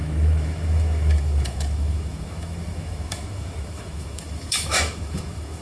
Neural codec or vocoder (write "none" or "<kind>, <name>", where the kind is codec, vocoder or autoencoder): autoencoder, DAC-VAE